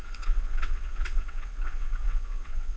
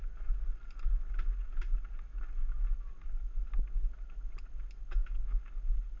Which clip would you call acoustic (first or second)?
second